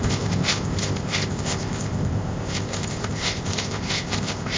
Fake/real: fake